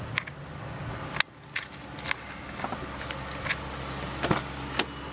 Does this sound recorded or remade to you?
recorded